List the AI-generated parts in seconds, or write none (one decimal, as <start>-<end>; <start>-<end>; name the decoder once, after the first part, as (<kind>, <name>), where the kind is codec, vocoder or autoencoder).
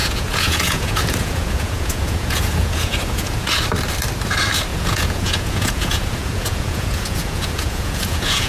0.0-3.5 (vocoder, Vocos); 4.7-8.5